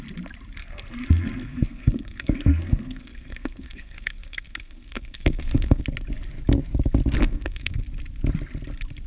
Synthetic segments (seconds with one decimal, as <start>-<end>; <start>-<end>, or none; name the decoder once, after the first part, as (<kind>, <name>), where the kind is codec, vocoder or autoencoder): 0.6-5.8 (codec, SNAC); 7.2-7.8